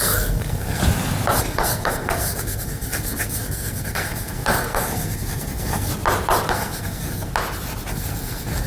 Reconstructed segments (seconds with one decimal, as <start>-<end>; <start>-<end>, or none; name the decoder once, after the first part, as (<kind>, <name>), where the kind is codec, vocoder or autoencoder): 0.0-0.8 (codec, SNAC); 1.4-5.9; 6.5-7.3; 7.9-8.7